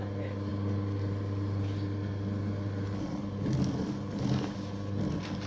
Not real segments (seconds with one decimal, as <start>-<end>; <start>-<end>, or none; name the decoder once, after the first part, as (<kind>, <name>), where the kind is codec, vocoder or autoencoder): none